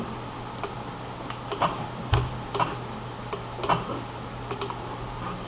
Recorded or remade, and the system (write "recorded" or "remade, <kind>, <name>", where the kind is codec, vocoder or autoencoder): recorded